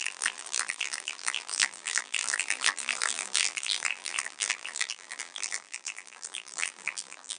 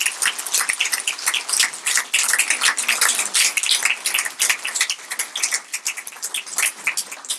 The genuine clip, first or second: second